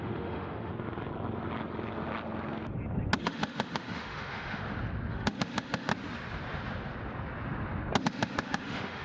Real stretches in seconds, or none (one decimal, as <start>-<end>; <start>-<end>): 0.7-3.2; 4.6-5.1; 5.9-8.0